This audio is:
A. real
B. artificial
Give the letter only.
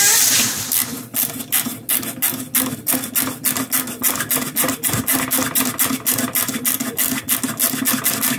A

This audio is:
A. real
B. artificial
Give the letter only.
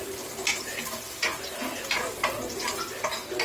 A